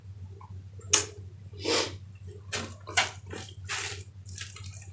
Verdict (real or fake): real